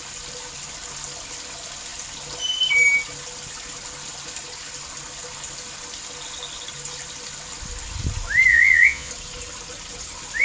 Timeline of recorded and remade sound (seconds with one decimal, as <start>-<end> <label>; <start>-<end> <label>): 0.0-8.5 recorded; 8.5-9.1 remade; 9.1-10.4 recorded